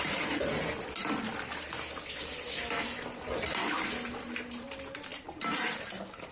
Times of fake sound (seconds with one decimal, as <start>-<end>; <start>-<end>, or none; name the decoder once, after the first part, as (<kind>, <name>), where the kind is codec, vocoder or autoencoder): none